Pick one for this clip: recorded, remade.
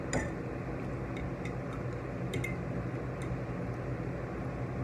recorded